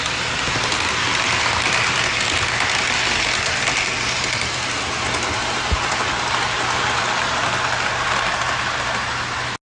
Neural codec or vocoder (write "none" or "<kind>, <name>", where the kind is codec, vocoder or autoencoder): none